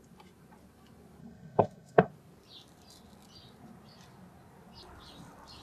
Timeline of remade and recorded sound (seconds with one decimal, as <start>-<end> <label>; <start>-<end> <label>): 0.0-1.2 recorded; 1.2-2.1 remade; 2.1-5.6 recorded